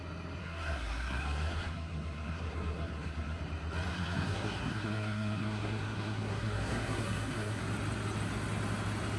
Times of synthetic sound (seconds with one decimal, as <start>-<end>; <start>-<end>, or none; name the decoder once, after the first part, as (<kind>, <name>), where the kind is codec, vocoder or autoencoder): 0.4-3.4 (codec, SNAC); 3.9-7.6

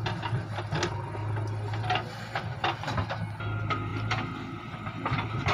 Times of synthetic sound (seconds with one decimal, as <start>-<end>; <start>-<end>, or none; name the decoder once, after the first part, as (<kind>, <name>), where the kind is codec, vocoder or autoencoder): none

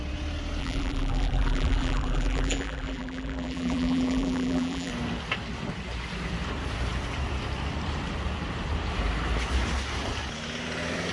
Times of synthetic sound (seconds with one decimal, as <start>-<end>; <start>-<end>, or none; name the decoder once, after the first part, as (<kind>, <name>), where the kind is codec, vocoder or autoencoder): 0.6-4.9 (vocoder, BigVGAN v2)

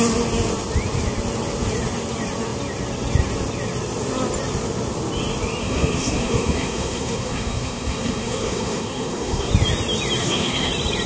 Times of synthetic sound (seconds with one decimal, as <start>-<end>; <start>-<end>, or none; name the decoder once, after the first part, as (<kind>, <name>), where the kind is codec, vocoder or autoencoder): 5.6-9.5 (codec, SNAC); 10.2-10.7

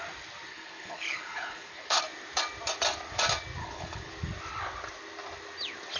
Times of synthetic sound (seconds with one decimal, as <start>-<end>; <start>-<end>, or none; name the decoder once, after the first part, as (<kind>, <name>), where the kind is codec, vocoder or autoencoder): 0.5-2.0 (codec, HILCodec); 3.6-4.1

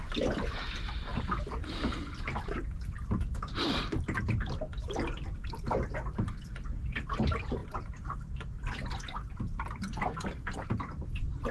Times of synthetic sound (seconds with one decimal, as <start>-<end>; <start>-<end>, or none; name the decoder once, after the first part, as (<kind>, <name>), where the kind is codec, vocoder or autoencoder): none